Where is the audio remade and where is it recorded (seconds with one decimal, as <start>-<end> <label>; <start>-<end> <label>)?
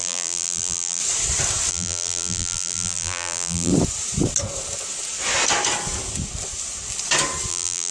0.0-1.0 remade; 1.0-1.7 recorded; 1.7-3.7 remade; 3.7-7.5 recorded; 7.5-7.9 remade